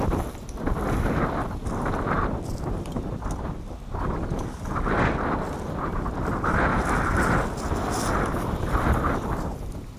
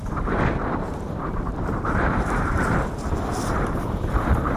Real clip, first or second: first